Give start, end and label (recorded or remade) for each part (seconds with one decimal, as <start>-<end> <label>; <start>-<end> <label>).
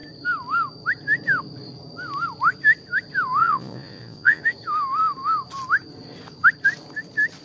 0.0-3.4 recorded; 3.4-4.4 remade; 4.4-7.4 recorded